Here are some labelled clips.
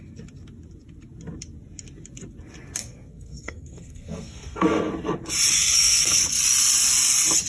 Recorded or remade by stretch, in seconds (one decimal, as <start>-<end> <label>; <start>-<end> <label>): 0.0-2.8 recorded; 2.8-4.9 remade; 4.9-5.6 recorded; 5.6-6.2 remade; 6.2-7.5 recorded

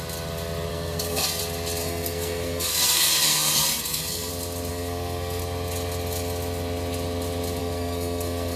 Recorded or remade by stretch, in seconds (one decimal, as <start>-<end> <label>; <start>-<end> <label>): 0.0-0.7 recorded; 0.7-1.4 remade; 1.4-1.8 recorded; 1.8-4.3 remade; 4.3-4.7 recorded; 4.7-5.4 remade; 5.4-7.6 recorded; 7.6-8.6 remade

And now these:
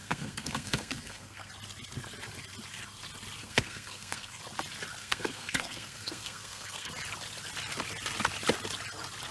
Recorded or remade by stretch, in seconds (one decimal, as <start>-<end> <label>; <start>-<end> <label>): 0.0-1.5 remade; 1.5-3.4 recorded; 3.4-4.4 remade; 4.4-5.0 recorded; 5.0-6.9 remade; 6.9-9.3 recorded